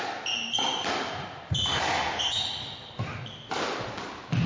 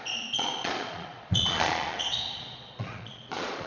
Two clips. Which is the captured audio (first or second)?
first